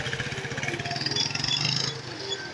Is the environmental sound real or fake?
real